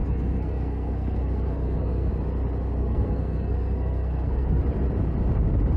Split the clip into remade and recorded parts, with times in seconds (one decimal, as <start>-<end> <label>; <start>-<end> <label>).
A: 0.0-2.1 remade; 2.1-2.8 recorded; 2.8-4.6 remade; 4.6-5.8 recorded